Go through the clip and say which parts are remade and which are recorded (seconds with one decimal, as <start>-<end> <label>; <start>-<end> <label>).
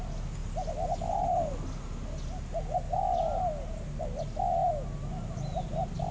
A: 0.0-6.1 recorded